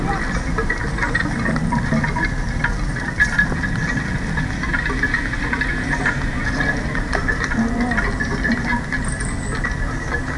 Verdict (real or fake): real